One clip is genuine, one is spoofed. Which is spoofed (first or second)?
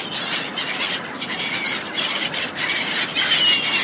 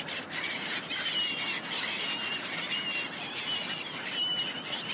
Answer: first